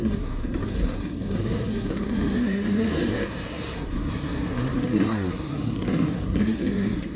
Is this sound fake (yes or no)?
yes